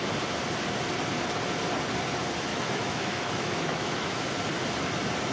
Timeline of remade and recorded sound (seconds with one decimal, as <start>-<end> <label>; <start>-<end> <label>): 0.0-2.5 recorded; 2.5-4.2 remade; 4.2-5.3 recorded